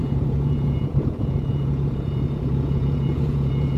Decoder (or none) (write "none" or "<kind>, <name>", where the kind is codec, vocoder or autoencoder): vocoder, Vocos